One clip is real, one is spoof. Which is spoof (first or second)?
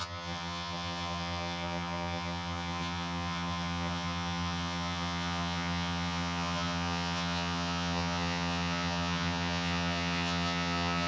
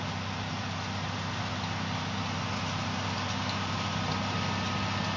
first